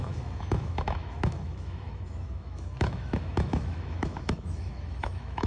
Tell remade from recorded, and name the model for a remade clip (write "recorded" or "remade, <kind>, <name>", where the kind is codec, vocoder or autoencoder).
remade, autoencoder, DAC-VAE